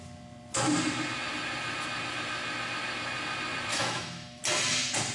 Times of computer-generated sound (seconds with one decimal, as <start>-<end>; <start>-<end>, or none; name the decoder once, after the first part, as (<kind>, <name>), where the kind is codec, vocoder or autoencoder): 3.7-4.4 (autoencoder, DAC-VAE)

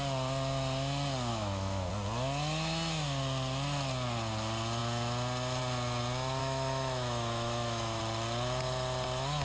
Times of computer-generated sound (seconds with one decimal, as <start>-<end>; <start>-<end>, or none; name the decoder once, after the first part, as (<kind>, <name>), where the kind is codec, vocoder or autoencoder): 1.3-1.9 (autoencoder, DAC-VAE); 6.4-8.0

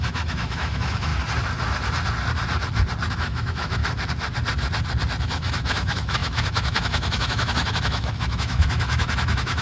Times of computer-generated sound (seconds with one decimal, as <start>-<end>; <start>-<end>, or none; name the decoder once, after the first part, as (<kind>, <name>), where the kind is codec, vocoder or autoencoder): 0.0-1.1 (autoencoder, DAC-VAE); 3.1-3.8; 5.2-9.6

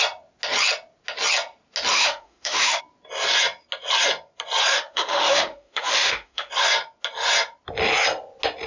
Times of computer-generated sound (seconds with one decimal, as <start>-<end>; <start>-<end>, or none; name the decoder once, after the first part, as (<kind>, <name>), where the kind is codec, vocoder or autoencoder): 1.9-2.8 (autoencoder, DAC-VAE); 4.7-6.5

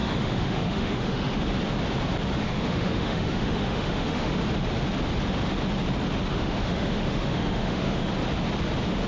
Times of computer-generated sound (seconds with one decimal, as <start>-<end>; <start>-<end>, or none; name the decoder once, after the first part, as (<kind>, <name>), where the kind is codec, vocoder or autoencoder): 0.0-1.4 (autoencoder, DAC-VAE); 2.4-4.3; 6.3-8.1

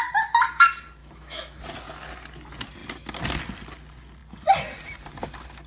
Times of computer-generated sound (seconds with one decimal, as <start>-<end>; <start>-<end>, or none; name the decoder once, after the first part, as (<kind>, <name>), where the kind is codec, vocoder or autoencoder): 1.0-1.6 (autoencoder, DAC-VAE)

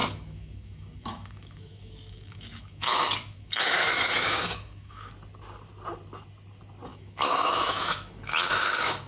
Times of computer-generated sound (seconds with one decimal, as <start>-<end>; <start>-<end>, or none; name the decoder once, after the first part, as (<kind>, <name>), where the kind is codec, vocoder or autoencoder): 0.0-5.1 (autoencoder, DAC-VAE); 6.9-9.1

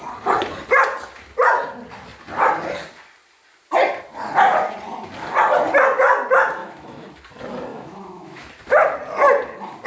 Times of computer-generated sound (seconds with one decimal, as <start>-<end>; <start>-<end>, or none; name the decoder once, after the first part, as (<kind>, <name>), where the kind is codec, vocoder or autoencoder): 6.6-7.1 (autoencoder, DAC-VAE); 7.7-8.5